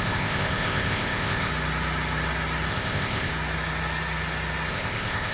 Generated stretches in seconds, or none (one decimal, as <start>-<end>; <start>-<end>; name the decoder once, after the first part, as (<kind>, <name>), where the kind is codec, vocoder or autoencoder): 0.0-1.5 (codec, ZipCodec); 2.7-3.3; 4.7-5.3